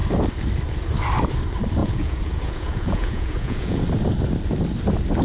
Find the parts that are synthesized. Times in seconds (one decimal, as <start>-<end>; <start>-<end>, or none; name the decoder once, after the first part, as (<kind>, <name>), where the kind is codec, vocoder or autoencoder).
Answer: 1.8-3.8 (vocoder, Vocos)